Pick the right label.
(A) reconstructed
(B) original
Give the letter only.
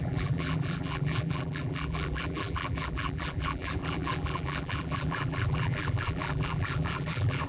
A